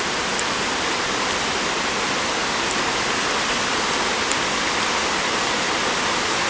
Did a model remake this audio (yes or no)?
no